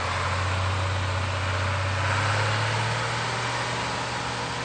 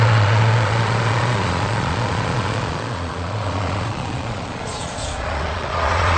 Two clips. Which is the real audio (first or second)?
first